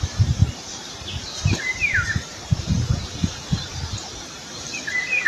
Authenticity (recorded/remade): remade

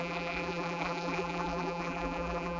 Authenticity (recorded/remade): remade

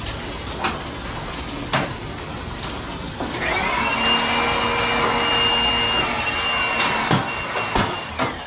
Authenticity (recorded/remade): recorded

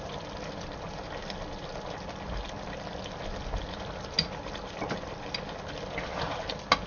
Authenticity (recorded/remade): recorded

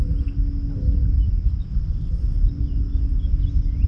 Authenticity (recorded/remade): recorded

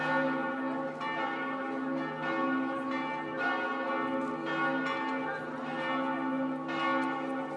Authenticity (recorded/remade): recorded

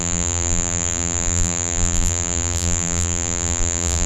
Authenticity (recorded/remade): remade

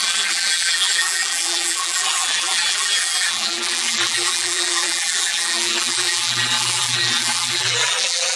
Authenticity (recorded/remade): remade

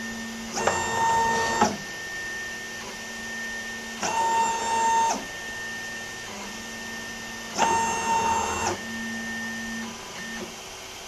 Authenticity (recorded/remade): recorded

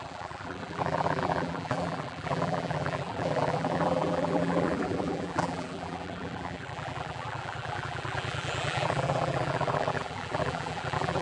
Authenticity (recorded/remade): remade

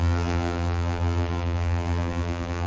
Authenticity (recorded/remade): remade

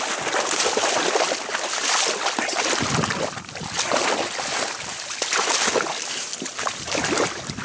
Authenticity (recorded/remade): recorded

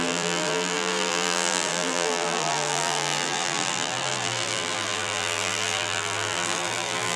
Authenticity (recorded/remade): remade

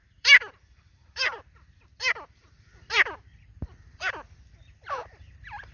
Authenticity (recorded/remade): remade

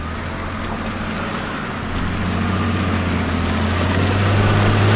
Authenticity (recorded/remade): recorded